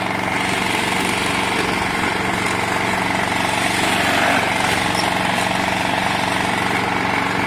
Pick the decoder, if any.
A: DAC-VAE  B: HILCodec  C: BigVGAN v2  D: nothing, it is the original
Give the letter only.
D